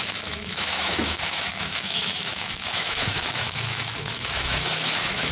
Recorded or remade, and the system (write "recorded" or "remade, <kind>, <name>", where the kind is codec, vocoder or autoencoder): remade, autoencoder, DAC-VAE